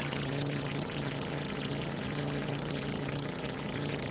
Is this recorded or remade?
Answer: remade